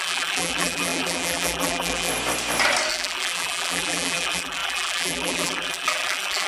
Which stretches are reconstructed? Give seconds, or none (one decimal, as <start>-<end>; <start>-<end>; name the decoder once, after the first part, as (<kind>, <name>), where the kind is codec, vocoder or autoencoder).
0.0-2.1 (vocoder, BigVGAN v2); 2.9-6.5